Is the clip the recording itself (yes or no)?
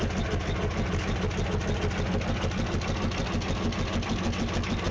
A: yes